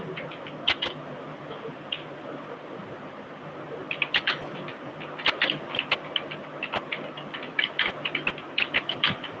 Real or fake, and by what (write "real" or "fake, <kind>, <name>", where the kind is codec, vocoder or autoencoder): real